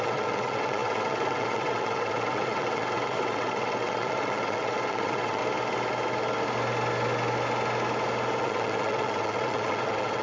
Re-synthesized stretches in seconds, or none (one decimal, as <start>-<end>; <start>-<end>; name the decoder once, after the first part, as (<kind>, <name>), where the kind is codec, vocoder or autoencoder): 0.0-5.4 (vocoder, WaveNeXt); 8.4-10.2